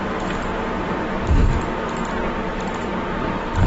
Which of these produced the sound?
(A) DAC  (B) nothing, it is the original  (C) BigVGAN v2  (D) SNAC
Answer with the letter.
B